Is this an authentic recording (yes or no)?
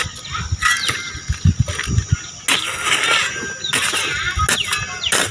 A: yes